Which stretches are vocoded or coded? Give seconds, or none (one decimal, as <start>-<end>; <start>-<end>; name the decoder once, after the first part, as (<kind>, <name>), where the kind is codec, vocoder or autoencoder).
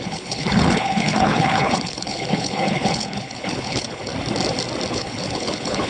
0.0-4.1 (codec, HILCodec); 4.9-5.9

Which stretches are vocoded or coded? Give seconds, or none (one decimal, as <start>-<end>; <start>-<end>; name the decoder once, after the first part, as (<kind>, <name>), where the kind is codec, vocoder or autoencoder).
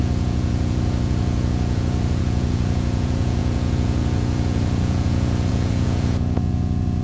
0.0-7.0 (vocoder, Vocos)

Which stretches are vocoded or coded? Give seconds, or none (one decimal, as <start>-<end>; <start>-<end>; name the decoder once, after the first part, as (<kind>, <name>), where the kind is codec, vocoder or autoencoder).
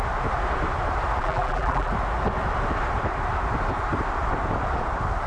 1.2-1.9 (vocoder, BigVGAN v2)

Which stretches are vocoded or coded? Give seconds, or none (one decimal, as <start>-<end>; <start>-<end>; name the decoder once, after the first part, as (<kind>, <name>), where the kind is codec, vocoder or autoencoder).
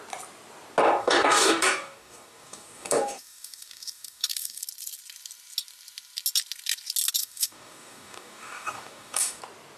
1.0-4.6 (codec, DAC); 7.2-9.4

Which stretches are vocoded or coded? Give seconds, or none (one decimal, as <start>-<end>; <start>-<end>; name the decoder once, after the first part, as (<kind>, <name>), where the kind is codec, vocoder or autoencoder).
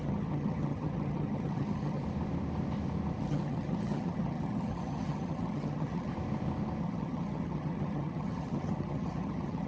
0.0-2.0 (vocoder, HiFi-GAN); 3.2-6.1; 6.8-9.7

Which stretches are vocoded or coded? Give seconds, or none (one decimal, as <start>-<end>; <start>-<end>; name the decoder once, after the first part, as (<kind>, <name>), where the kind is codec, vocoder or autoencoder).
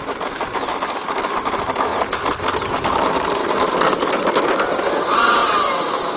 3.4-4.3 (vocoder, BigVGAN v2)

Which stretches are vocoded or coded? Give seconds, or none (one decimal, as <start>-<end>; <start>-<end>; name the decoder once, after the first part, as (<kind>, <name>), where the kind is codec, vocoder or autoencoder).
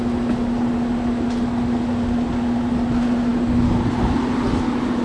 none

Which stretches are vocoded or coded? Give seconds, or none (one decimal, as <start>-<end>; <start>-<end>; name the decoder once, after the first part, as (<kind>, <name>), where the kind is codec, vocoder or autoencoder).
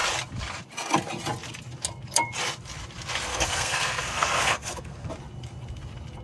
3.3-5.1 (codec, SNAC)